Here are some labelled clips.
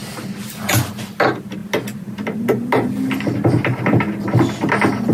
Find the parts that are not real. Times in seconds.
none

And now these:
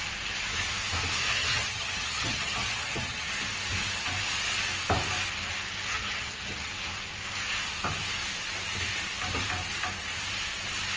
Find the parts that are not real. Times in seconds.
1.2-3.3 (vocoder, HiFi-GAN); 5.9-6.7

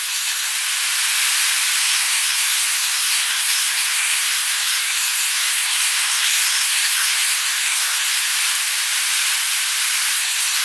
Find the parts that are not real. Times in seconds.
0.0-0.5 (codec, SNAC); 1.8-8.3; 10.1-10.6